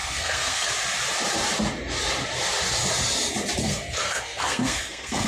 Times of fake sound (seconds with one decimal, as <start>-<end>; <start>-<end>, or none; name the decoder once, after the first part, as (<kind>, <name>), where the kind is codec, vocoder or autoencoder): 0.0-0.7 (codec, SNAC); 3.6-5.3